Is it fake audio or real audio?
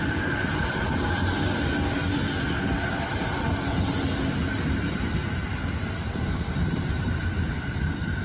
real